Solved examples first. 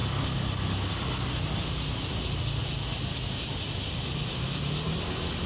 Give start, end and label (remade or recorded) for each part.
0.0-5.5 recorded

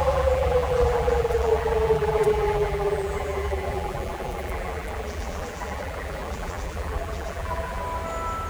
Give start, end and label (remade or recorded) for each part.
0.0-7.8 remade; 7.8-8.5 recorded